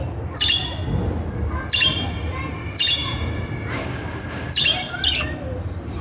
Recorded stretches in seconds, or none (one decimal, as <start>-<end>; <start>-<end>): 0.0-6.0

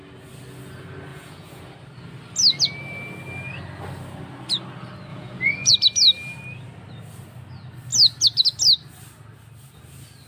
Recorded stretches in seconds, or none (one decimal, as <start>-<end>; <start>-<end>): 0.0-1.1; 1.6-5.1; 5.7-10.3

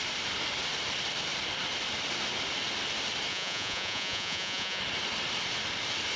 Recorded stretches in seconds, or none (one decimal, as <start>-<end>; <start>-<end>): 0.0-3.3; 4.8-6.2